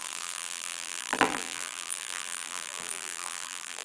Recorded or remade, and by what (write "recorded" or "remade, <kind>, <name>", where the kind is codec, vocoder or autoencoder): remade, vocoder, BigVGAN v2